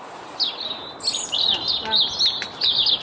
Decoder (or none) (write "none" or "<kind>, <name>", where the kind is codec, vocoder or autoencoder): none